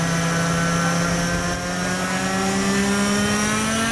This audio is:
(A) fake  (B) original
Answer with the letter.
B